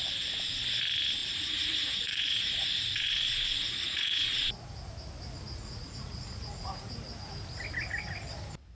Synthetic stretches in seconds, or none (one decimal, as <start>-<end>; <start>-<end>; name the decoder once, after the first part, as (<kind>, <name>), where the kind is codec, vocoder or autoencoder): 1.2-4.9 (vocoder, Vocos); 5.6-7.0

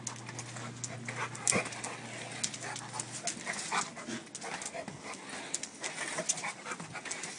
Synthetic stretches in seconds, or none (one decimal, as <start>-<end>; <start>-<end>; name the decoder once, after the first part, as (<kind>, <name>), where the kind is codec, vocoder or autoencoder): none

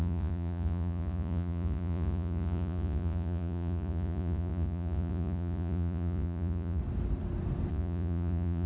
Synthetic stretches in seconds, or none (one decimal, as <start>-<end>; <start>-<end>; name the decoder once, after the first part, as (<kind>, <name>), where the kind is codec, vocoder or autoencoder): 0.0-6.8 (vocoder, Vocos); 7.7-8.7

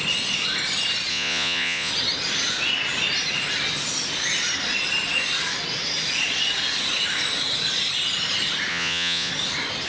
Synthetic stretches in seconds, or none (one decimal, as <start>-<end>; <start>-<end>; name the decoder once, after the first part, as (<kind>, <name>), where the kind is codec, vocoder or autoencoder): 1.1-1.9 (vocoder, Vocos); 8.7-9.3

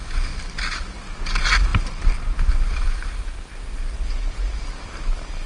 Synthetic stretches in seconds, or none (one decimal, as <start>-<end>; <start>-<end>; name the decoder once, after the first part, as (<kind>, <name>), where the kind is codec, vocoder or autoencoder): none

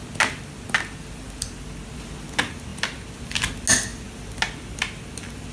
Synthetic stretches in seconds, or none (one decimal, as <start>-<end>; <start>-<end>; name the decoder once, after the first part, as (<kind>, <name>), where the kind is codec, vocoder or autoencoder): none

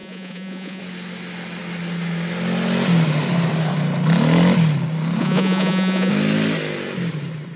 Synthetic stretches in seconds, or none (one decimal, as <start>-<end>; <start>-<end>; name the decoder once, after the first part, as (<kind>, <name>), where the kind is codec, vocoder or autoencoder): 0.0-0.8 (vocoder, Vocos); 5.2-6.1